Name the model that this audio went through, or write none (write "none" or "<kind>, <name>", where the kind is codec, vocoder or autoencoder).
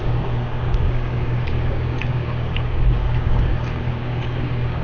codec, DAC